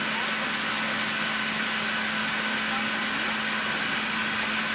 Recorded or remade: recorded